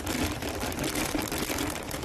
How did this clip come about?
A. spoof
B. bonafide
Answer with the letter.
B